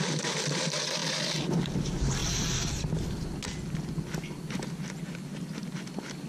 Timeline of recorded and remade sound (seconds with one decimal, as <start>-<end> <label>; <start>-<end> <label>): 0.0-6.3 recorded